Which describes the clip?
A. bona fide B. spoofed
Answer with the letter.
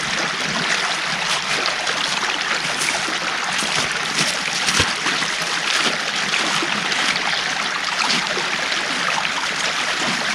A